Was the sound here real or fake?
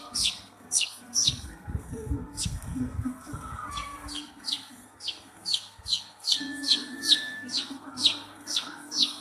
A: fake